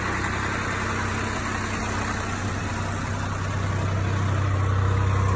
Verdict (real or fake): real